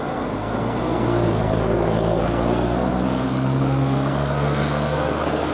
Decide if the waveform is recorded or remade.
remade